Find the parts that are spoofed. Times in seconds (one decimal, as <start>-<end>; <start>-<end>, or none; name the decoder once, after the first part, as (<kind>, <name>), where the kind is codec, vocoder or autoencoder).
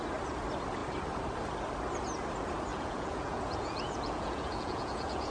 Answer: 2.7-5.3 (vocoder, Vocos)